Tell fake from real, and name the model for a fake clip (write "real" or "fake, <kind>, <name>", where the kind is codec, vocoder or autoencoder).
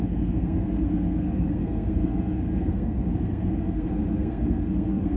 fake, codec, SNAC